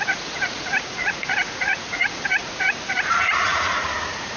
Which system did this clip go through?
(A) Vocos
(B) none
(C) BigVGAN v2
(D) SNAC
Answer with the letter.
A